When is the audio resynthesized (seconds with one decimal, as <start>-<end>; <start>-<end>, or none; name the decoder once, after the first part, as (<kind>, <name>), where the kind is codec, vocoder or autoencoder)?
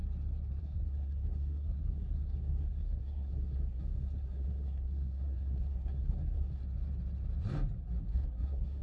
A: 0.6-6.6 (codec, SNAC); 8.0-8.8